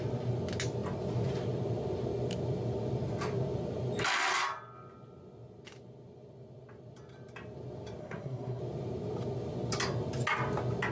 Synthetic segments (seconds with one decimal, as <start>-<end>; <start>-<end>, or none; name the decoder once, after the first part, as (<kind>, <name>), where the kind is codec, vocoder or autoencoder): 8.0-8.6 (codec, SNAC)